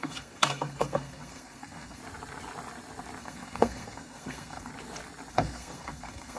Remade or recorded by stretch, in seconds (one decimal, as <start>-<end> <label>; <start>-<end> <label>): 0.0-2.0 remade; 2.0-3.2 recorded; 3.2-4.7 remade; 4.7-5.3 recorded; 5.3-6.4 remade